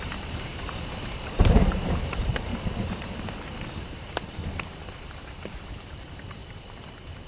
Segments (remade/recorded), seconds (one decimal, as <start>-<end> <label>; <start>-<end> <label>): 0.0-2.5 remade; 2.5-3.8 recorded; 3.8-7.3 remade